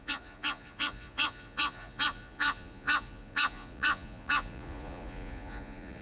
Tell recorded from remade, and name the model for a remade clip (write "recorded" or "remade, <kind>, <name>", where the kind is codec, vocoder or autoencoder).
remade, vocoder, Vocos